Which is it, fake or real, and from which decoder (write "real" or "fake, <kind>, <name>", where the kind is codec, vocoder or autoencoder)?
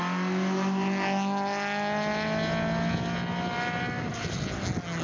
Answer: real